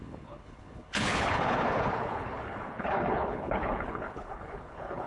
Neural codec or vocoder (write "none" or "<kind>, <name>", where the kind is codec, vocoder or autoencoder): codec, HILCodec